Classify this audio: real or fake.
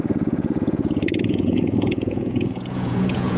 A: fake